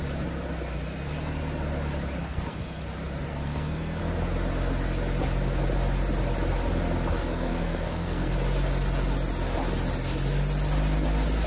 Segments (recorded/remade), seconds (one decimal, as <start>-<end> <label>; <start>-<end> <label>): 0.0-2.2 recorded; 2.2-2.8 remade; 2.8-3.3 recorded; 3.3-4.0 remade; 4.0-7.2 recorded; 7.2-8.3 remade; 8.3-11.5 recorded